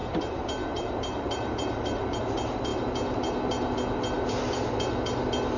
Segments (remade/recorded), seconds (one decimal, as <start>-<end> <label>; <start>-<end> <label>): 0.0-2.2 remade; 2.2-5.6 recorded